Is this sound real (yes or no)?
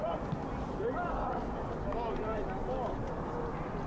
yes